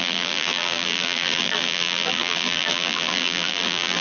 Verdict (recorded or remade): remade